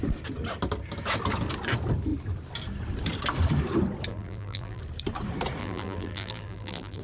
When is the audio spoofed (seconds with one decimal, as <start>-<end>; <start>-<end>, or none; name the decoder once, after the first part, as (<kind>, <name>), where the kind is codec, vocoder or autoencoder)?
4.1-4.8 (vocoder, BigVGAN v2); 5.6-7.0